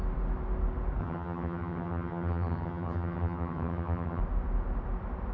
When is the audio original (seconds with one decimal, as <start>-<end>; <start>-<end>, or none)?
0.0-1.0; 4.2-5.3